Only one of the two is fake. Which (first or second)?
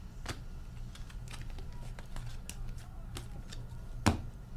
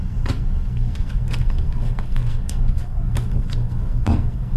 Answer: second